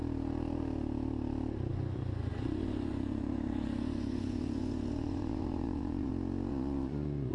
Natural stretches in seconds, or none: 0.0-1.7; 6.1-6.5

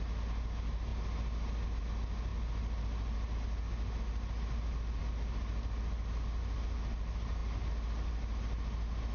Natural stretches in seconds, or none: 0.0-9.1

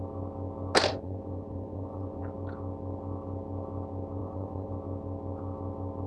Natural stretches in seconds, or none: 0.0-0.9; 2.2-4.2; 4.7-6.1

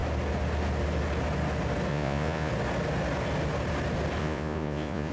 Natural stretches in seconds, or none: 0.0-1.9; 2.5-4.2

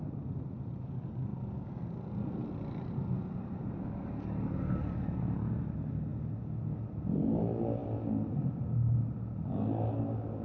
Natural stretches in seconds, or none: 0.0-10.4

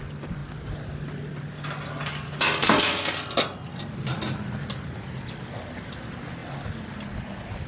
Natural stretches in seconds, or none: 0.0-7.7